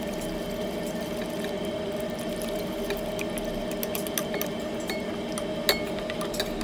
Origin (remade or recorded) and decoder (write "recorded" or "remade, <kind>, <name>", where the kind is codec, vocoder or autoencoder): recorded